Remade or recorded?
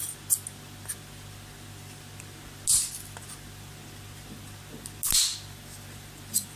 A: recorded